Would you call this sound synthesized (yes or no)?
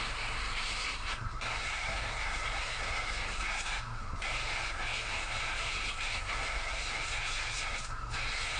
yes